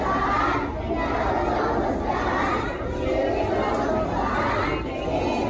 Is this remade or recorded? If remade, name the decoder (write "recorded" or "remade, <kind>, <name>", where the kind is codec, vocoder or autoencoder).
recorded